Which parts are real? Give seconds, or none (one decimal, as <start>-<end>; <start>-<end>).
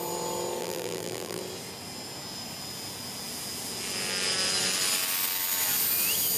0.0-0.6; 1.4-6.4